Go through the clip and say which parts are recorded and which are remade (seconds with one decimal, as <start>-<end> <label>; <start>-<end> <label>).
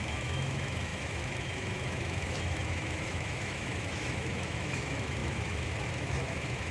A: 0.0-6.7 remade